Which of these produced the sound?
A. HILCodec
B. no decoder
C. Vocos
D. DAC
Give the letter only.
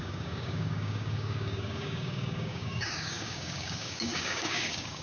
D